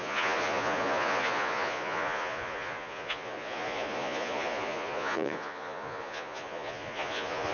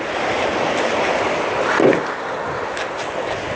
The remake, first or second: first